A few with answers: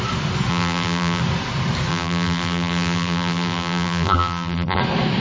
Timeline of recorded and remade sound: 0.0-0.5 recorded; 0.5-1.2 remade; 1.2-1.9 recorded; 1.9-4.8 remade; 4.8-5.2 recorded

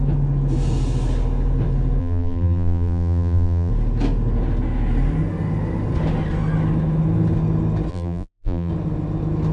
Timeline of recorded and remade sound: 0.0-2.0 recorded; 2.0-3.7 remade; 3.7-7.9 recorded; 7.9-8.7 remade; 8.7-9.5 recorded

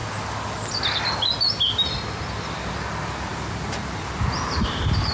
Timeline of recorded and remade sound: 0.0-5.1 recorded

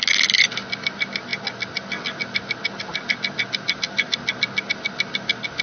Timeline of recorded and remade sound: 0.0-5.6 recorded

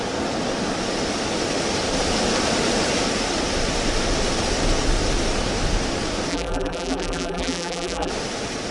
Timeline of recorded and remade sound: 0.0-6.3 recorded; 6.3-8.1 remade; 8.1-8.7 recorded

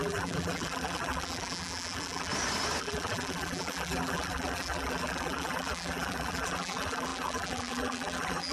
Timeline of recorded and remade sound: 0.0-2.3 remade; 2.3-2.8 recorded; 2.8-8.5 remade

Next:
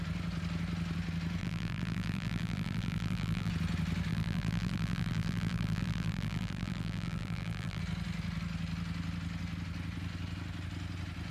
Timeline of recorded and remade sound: 0.0-1.4 recorded; 1.4-3.5 remade; 3.5-4.1 recorded; 4.1-7.8 remade; 7.8-11.3 recorded